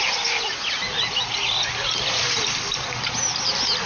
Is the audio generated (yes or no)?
no